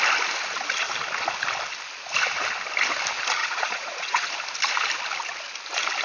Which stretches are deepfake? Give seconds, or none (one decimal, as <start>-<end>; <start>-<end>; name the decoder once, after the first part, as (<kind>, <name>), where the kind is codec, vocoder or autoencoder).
3.4-4.3 (vocoder, Vocos)